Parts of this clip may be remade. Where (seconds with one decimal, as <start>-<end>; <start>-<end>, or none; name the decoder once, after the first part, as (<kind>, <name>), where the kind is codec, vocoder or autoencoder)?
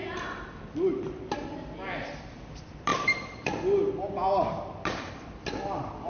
none